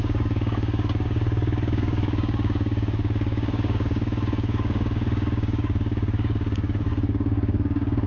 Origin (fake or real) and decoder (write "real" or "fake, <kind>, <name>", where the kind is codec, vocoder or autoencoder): fake, codec, DAC